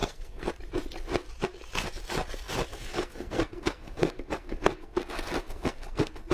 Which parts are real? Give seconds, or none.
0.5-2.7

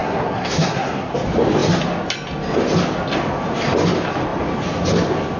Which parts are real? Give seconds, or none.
1.1-5.4